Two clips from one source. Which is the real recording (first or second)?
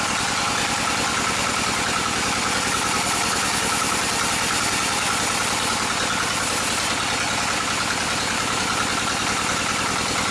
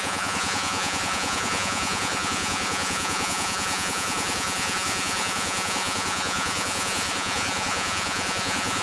first